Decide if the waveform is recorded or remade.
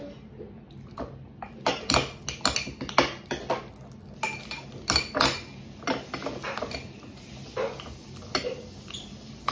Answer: recorded